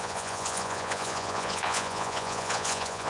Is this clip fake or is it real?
fake